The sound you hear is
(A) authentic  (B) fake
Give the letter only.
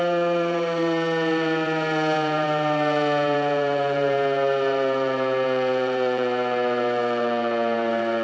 B